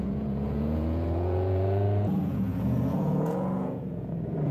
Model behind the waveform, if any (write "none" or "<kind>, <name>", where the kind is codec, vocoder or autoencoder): vocoder, Vocos